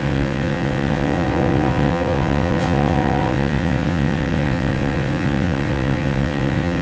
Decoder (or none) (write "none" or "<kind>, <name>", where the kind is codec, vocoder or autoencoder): vocoder, WaveNeXt